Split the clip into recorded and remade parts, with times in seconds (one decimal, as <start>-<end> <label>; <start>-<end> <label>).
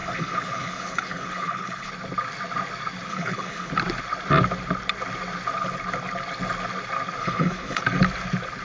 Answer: 0.0-1.9 remade; 1.9-3.1 recorded; 3.1-3.7 remade; 3.7-7.2 recorded; 7.2-7.8 remade; 7.8-8.6 recorded